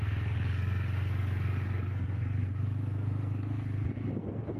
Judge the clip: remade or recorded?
remade